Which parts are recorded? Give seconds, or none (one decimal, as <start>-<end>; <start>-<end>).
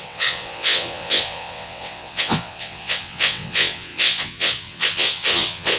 none